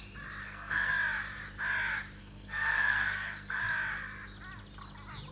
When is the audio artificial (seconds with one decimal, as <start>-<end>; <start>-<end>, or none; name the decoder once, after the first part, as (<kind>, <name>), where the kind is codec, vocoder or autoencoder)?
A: 0.4-0.9 (codec, SNAC); 2.2-3.6